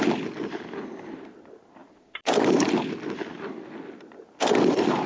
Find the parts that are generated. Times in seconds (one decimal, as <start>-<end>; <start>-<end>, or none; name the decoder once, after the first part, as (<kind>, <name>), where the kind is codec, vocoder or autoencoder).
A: none